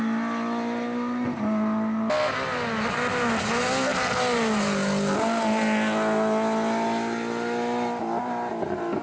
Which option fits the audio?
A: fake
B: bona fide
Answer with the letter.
B